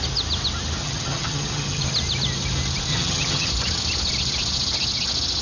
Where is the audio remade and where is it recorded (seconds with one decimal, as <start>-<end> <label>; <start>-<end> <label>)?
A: 0.0-0.8 recorded; 0.8-1.8 remade; 1.8-2.9 recorded; 2.9-3.5 remade; 3.5-5.4 recorded